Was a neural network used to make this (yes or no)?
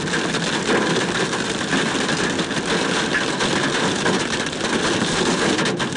no